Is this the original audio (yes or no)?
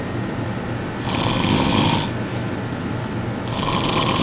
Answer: yes